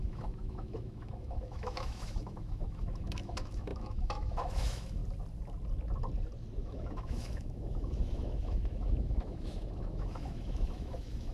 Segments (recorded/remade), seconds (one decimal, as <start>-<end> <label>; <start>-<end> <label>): 0.0-5.0 remade; 5.0-6.6 recorded; 6.6-11.3 remade